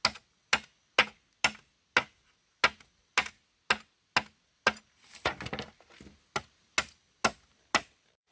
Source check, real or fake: real